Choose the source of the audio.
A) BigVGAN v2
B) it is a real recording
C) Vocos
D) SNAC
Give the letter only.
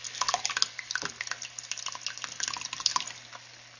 B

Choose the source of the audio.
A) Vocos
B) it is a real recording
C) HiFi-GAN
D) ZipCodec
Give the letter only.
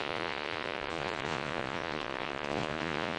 A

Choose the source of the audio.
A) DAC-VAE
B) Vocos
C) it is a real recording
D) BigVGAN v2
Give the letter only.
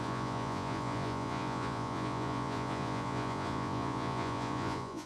B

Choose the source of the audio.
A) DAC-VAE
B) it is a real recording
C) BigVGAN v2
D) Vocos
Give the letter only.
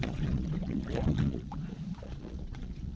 D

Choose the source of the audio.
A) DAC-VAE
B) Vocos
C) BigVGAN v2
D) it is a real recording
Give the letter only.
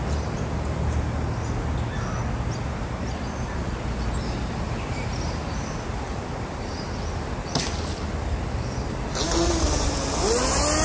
D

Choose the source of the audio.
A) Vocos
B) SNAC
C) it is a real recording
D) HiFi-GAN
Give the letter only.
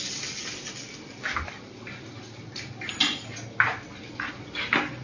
C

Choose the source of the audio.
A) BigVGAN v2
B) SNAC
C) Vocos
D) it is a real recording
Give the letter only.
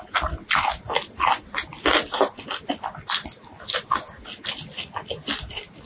D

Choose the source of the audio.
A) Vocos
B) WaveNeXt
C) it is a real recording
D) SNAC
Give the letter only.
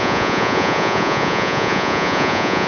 A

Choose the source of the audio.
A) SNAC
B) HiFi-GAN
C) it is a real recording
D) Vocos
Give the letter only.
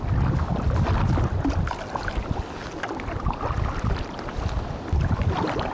C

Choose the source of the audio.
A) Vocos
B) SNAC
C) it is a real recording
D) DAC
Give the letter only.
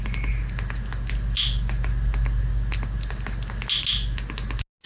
C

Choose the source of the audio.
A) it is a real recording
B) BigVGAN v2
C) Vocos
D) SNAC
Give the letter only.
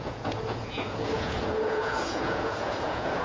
C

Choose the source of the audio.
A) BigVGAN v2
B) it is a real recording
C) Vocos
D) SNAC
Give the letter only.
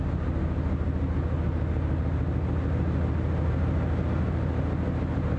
B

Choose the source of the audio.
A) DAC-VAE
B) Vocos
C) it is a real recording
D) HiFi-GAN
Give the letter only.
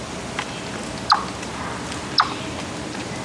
C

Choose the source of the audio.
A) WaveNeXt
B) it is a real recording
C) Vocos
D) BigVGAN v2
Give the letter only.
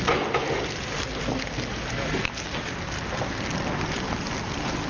B